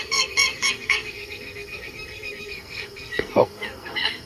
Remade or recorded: remade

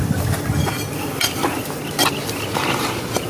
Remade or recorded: recorded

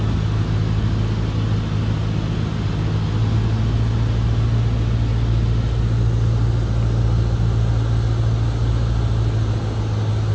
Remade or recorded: recorded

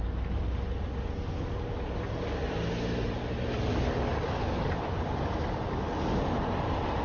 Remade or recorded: recorded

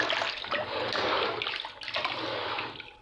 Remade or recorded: recorded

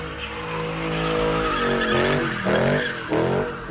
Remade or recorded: recorded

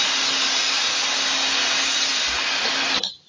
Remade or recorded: recorded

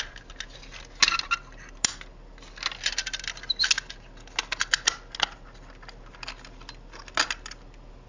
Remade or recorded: recorded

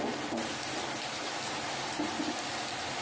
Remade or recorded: recorded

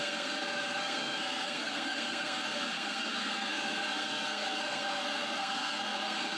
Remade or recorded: remade